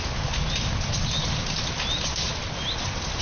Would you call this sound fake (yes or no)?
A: no